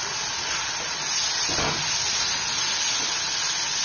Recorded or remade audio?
recorded